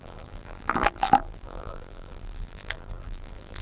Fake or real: fake